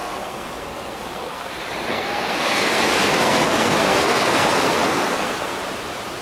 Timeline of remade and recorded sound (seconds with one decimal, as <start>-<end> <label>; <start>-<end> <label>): 0.0-1.5 remade; 1.5-1.9 recorded; 1.9-5.6 remade; 5.6-6.2 recorded